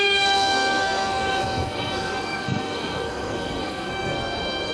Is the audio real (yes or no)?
no